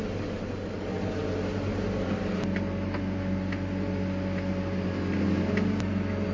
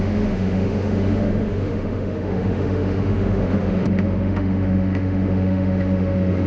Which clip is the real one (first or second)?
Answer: first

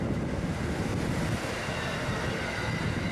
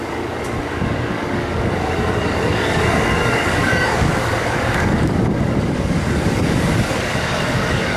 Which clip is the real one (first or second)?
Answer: first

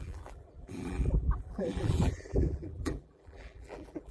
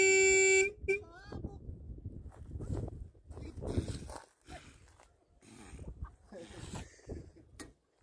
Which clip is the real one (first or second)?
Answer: second